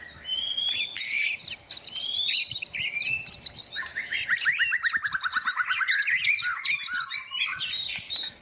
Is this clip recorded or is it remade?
remade